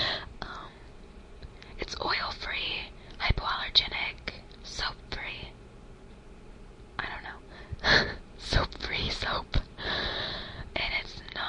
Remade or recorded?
recorded